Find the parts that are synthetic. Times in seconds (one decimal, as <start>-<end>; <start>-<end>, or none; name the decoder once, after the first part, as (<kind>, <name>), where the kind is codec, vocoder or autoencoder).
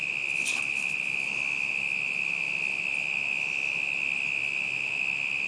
none